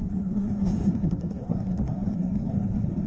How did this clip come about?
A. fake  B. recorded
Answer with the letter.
A